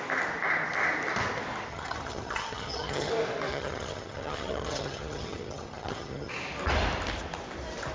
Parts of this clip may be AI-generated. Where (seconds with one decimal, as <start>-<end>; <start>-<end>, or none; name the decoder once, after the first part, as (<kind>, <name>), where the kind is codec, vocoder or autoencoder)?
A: 1.7-3.1 (vocoder, HiFi-GAN); 3.5-6.3